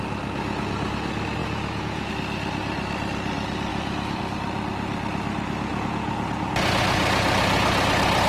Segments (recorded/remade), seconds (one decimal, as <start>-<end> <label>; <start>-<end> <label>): 0.0-1.4 recorded; 1.4-2.1 remade; 2.1-3.7 recorded; 3.7-4.2 remade; 4.2-5.7 recorded; 5.7-6.5 remade; 6.5-8.3 recorded